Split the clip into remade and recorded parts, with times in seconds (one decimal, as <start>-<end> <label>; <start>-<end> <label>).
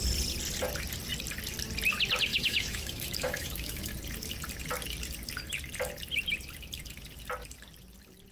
0.0-2.3 recorded; 2.3-3.9 remade; 3.9-8.3 recorded